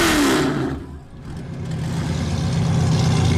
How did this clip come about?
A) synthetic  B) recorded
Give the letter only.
B